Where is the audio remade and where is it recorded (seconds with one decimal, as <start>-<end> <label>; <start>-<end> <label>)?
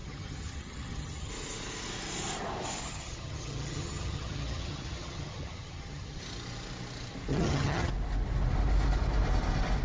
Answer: 0.0-1.3 remade; 1.3-2.8 recorded; 2.8-6.2 remade; 6.2-7.3 recorded; 7.3-7.9 remade; 7.9-9.8 recorded